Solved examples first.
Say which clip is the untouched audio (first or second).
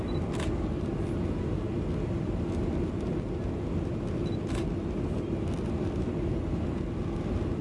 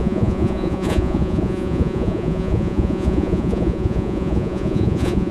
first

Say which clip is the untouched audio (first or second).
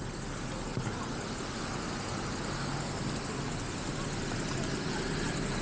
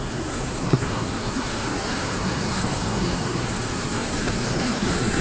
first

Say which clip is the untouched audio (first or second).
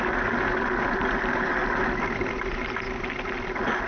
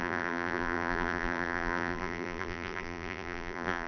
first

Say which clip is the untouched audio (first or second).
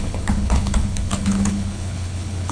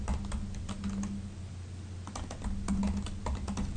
second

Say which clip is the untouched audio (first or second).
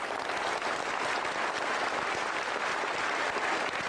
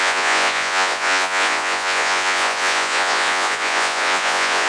first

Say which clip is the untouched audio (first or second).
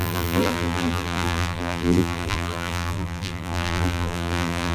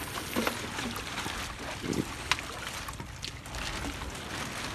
second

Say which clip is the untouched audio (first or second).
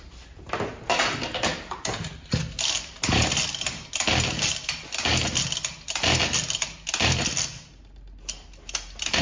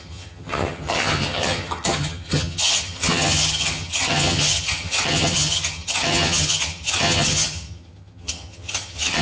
first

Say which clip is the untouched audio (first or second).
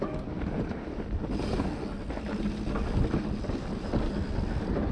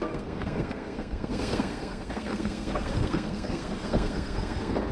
first